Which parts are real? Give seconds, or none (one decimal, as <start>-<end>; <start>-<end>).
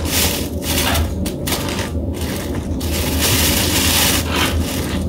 0.0-5.1